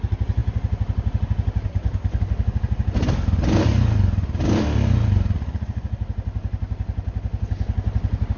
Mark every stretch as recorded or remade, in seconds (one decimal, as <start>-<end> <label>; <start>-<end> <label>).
0.0-8.4 recorded